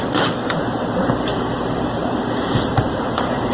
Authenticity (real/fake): fake